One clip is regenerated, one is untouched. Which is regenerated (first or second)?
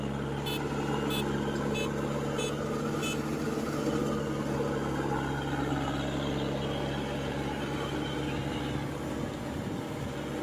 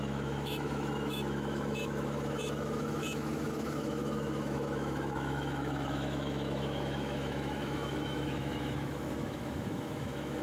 second